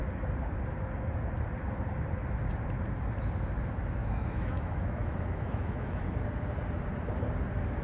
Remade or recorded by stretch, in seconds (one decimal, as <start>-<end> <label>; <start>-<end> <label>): 0.0-4.0 recorded; 4.0-6.0 remade; 6.0-7.8 recorded